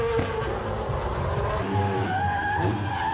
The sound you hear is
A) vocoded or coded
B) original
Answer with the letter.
B